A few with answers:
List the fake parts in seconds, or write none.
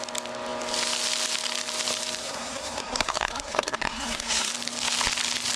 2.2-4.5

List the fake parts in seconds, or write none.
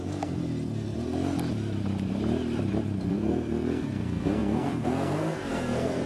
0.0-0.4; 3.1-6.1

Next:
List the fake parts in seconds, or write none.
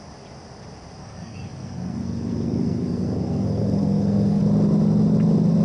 1.0-4.4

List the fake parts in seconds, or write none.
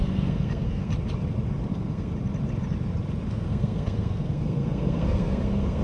0.0-0.9; 1.7-2.1; 3.3-5.8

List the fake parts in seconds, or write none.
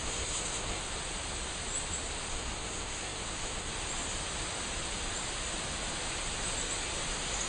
0.0-0.8; 2.3-3.7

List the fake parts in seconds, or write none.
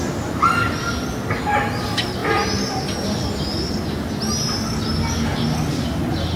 none